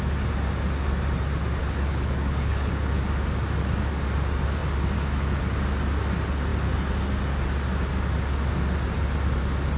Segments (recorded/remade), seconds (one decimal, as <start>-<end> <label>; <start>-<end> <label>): 0.0-1.6 recorded; 1.6-2.7 remade; 2.7-9.8 recorded

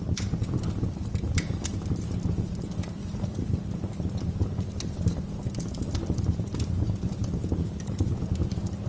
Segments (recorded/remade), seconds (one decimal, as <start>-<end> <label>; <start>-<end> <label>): 0.0-3.0 recorded; 3.0-3.5 remade; 3.5-8.9 recorded

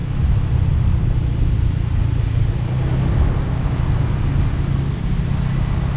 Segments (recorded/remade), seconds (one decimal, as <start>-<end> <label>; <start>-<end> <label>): 0.0-6.0 recorded

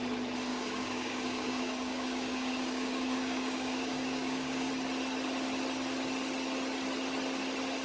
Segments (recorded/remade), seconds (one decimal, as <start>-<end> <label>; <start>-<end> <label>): 0.0-0.5 recorded; 0.5-4.7 remade; 4.7-7.8 recorded

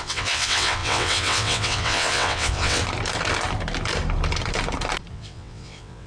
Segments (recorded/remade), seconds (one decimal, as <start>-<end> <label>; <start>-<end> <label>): 0.0-2.8 remade; 2.8-5.1 recorded; 5.1-6.1 remade